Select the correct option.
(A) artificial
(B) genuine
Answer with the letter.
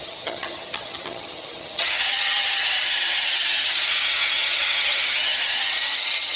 A